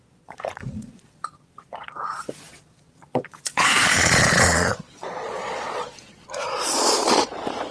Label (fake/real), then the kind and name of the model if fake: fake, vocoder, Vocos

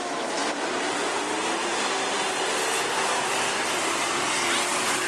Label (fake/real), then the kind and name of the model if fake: real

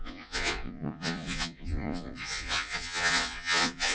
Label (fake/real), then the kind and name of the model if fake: fake, vocoder, Vocos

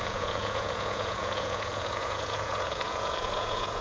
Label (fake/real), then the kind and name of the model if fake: fake, vocoder, Vocos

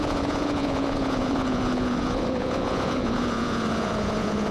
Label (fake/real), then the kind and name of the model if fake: fake, vocoder, Vocos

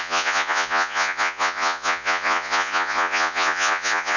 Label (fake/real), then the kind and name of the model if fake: fake, vocoder, Vocos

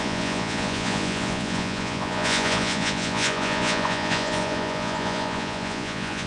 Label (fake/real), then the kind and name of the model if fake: fake, vocoder, Vocos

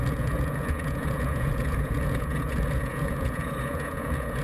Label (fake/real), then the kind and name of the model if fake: fake, vocoder, Vocos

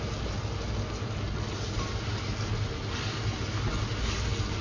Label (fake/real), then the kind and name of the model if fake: real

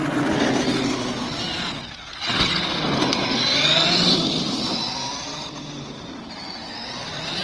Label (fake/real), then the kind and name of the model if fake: real